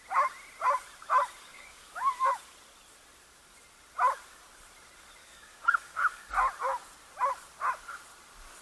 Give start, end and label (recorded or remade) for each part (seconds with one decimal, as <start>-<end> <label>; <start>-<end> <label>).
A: 0.0-1.5 recorded; 1.5-2.3 remade; 2.3-5.2 recorded; 5.2-6.3 remade; 6.3-8.6 recorded